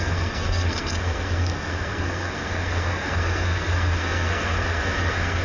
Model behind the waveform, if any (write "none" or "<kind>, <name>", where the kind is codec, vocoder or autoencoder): codec, SNAC